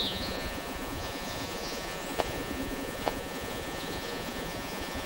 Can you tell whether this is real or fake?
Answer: fake